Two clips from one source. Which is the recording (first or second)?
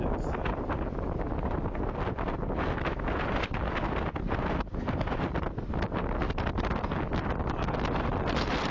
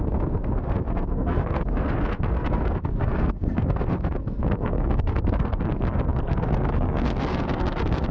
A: first